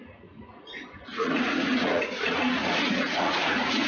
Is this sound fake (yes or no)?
yes